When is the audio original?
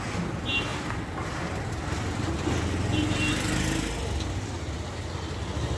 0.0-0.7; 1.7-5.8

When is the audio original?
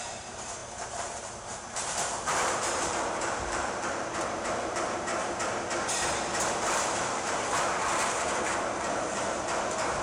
5.1-6.7